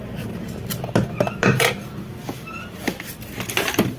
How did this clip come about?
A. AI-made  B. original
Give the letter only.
B